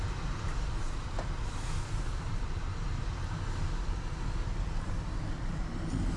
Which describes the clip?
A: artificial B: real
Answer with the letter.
B